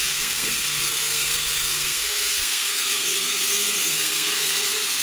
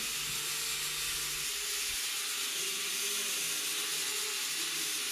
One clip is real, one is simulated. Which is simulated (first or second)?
first